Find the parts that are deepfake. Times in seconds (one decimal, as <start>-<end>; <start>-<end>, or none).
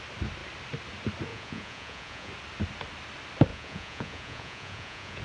1.3-2.3; 3.5-5.2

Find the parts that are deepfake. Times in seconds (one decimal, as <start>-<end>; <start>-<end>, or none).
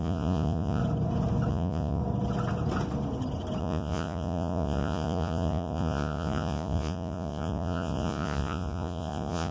0.0-0.8; 1.5-2.0; 3.6-9.5